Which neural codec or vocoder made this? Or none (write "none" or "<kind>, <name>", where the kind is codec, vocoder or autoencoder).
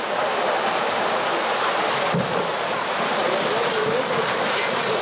none